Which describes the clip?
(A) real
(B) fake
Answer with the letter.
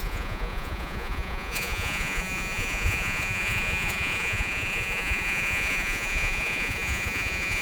B